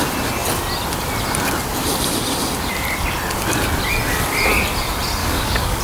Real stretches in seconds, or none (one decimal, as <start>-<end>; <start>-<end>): 0.0-5.2